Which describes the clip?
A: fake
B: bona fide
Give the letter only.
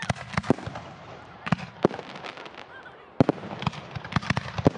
B